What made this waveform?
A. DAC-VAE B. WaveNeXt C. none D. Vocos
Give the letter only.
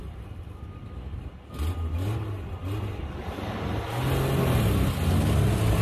C